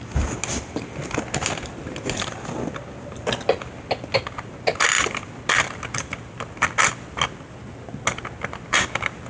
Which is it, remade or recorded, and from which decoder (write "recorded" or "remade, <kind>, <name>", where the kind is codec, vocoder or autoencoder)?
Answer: recorded